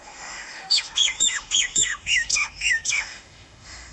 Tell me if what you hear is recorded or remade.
remade